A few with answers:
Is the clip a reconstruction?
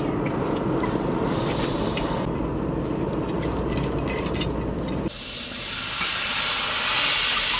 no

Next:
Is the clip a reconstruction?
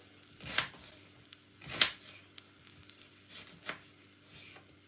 no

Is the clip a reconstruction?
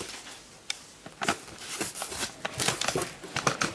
no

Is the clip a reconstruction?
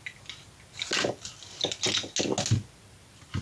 no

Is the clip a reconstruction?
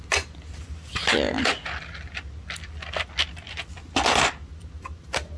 no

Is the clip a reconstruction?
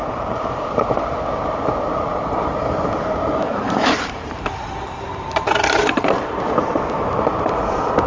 yes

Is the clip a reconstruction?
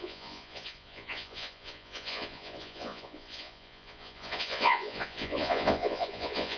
yes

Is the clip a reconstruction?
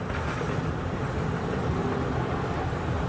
no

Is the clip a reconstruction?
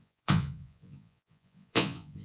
yes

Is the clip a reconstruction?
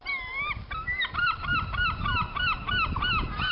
no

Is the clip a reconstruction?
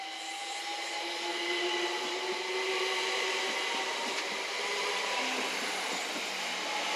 no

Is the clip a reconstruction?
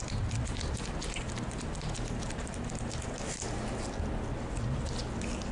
no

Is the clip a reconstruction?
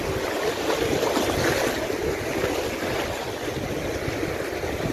no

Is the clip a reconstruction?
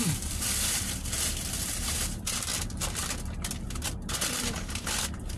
yes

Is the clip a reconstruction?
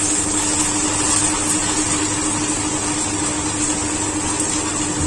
no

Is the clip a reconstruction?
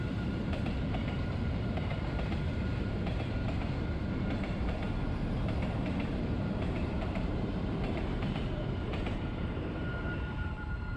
yes